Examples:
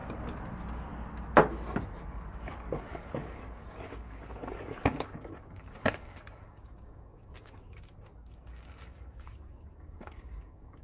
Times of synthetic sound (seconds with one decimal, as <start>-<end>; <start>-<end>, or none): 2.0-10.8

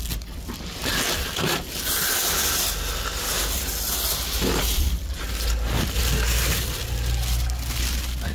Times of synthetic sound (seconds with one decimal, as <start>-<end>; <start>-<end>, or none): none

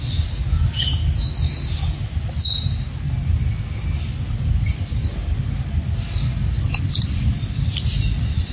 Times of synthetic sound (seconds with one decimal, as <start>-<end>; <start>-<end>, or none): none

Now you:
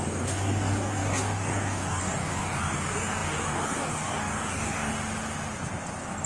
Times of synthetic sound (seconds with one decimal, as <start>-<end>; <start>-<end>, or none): 0.0-4.9

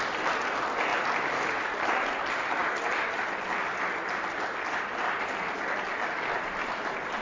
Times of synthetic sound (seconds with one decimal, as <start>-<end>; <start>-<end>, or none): none

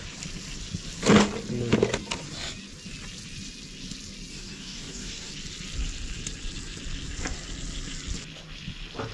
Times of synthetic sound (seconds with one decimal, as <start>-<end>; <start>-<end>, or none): 4.3-5.3